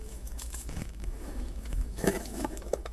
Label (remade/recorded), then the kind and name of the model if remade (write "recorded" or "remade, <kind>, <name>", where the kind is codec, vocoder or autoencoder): remade, autoencoder, DAC-VAE